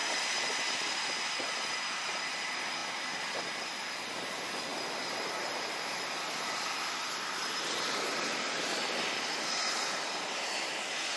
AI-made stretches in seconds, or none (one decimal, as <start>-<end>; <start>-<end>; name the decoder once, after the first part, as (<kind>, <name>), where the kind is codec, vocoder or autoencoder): none